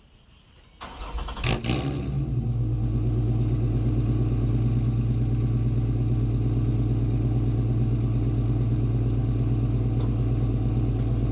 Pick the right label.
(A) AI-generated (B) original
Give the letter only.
B